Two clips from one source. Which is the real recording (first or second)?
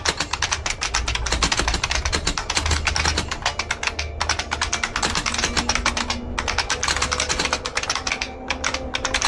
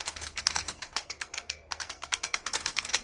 first